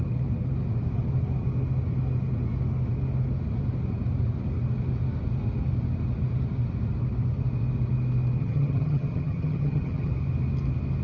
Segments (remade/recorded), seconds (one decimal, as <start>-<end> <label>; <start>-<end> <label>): 0.0-8.4 recorded; 8.4-10.1 remade; 10.1-11.0 recorded